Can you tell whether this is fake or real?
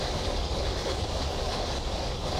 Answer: fake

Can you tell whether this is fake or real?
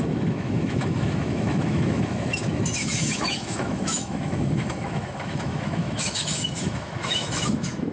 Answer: fake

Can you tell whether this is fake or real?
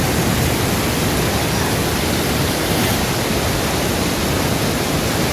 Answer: real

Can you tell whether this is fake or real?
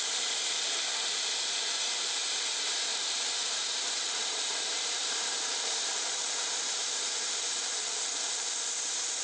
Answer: fake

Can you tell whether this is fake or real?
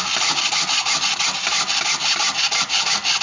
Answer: real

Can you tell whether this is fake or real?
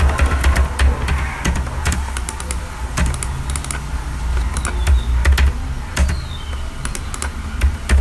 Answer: real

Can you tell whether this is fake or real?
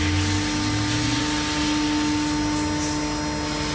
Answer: real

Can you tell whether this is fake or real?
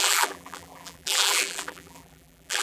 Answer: fake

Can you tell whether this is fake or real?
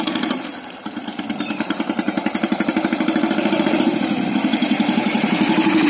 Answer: fake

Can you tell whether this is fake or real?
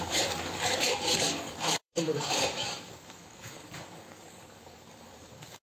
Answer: fake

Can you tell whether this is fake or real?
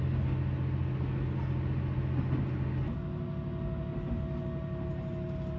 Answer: real